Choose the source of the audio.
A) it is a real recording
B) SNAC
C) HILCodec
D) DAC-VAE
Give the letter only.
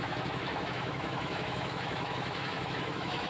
D